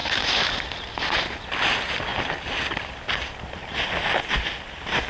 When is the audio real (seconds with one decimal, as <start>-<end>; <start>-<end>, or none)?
0.5-5.1